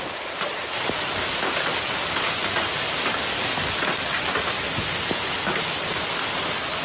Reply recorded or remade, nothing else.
recorded